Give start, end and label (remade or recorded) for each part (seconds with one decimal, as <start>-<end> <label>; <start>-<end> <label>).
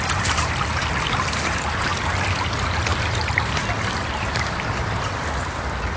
0.0-1.9 remade; 1.9-2.5 recorded; 2.5-6.0 remade